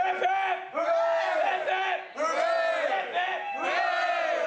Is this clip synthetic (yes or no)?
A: no